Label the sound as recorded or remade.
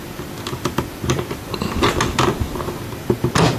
recorded